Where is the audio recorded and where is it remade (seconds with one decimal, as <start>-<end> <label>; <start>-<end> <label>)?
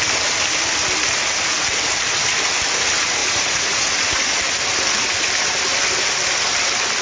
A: 0.0-3.2 recorded; 3.2-4.0 remade; 4.0-7.0 recorded